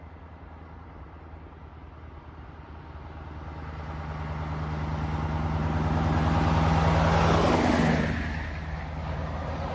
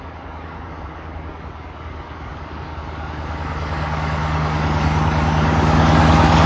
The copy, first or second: second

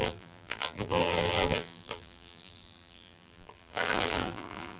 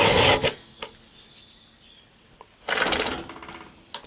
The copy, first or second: first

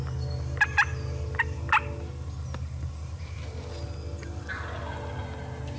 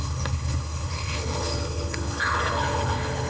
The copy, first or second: second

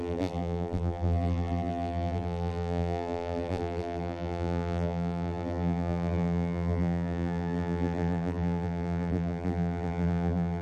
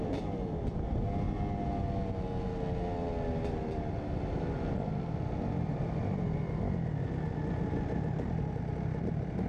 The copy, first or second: first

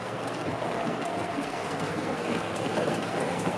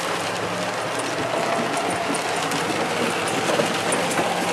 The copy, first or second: first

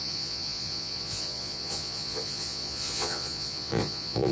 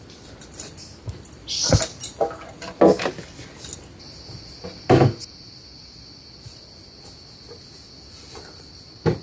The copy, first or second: first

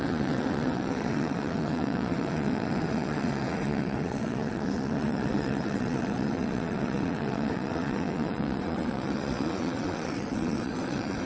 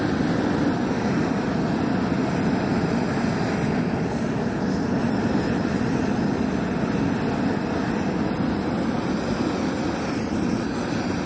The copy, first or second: first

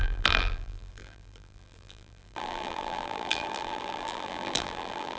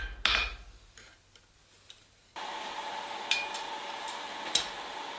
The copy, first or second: first